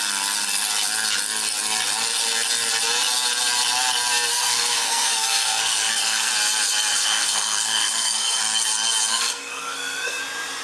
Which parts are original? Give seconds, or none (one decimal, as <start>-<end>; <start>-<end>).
0.0-4.3; 6.3-6.9; 8.4-9.1; 10.2-10.6